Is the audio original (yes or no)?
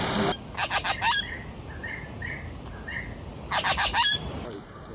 yes